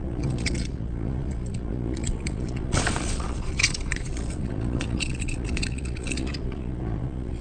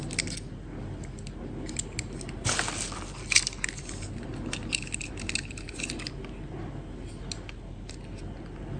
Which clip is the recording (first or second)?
second